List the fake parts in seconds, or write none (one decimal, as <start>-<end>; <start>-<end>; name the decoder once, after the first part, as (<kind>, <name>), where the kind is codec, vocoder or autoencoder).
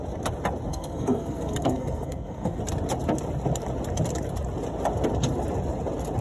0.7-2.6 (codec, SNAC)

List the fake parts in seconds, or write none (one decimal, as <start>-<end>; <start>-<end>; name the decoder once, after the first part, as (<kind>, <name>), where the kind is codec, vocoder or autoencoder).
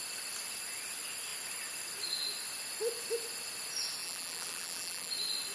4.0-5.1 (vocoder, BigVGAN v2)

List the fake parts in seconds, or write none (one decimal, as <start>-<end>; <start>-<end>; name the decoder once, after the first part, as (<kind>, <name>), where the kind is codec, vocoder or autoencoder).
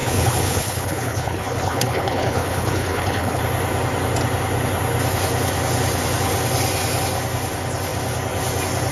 0.0-3.4 (codec, HILCodec)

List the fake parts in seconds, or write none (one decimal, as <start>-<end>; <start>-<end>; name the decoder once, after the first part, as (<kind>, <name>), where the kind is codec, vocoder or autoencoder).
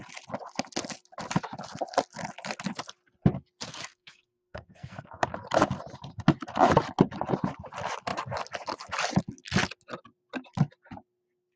3.7-5.3 (codec, SNAC)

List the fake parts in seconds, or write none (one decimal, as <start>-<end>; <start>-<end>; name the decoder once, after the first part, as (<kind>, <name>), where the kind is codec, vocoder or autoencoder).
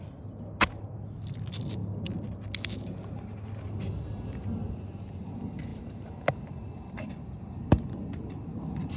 none